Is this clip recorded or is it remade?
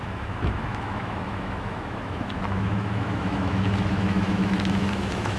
remade